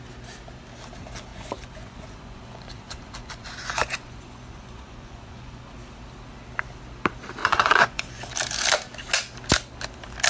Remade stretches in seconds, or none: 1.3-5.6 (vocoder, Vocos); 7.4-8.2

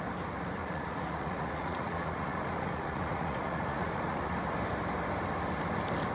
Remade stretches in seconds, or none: 0.6-4.3 (vocoder, Vocos)

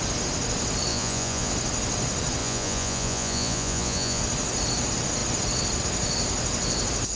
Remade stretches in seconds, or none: 0.9-1.5 (vocoder, Vocos); 2.4-4.2

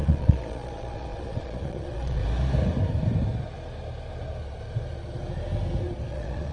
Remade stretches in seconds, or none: 0.0-2.2 (vocoder, Vocos); 6.1-6.5